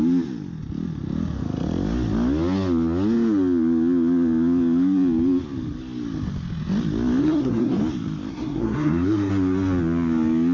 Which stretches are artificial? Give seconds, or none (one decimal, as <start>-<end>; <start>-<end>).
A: 7.2-7.8; 8.3-9.3